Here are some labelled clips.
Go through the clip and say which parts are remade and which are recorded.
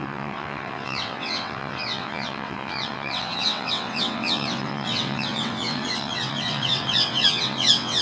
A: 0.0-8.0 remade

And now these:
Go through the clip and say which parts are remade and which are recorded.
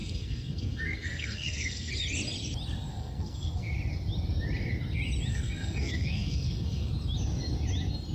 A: 0.0-1.9 remade; 1.9-2.9 recorded; 2.9-3.7 remade; 3.7-5.3 recorded; 5.3-6.9 remade; 6.9-8.1 recorded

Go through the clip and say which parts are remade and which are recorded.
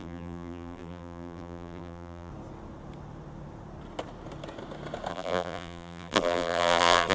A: 0.0-2.3 remade; 2.3-5.1 recorded; 5.1-7.1 remade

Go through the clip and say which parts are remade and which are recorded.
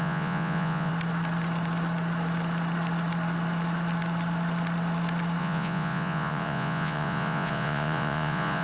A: 0.0-0.9 remade; 0.9-5.4 recorded; 5.4-8.6 remade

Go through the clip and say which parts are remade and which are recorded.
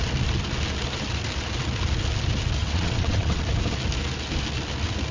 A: 0.0-2.6 recorded; 2.6-3.4 remade; 3.4-5.1 recorded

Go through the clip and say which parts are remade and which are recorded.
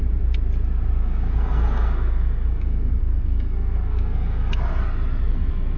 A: 0.0-1.0 recorded; 1.0-4.5 remade; 4.5-5.3 recorded; 5.3-5.8 remade